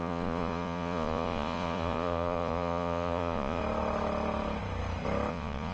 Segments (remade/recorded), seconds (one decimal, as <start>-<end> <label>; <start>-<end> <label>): 0.0-3.6 remade; 3.6-5.3 recorded; 5.3-5.7 remade